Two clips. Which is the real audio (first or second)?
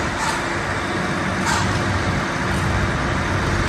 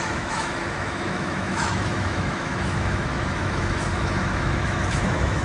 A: first